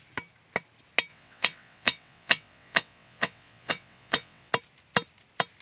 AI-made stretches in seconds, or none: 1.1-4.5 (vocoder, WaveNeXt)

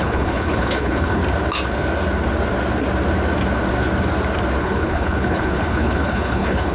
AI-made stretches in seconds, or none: 0.0-1.2 (codec, HILCodec); 4.6-6.7

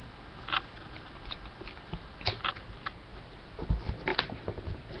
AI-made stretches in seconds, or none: none

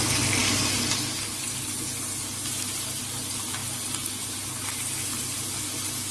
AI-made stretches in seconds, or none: none